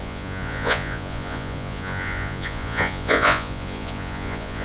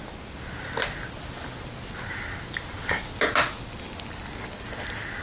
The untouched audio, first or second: second